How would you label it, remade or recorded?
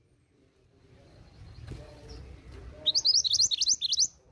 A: recorded